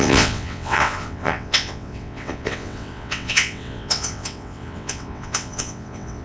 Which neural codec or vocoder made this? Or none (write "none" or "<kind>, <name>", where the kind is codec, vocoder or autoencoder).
vocoder, WaveNeXt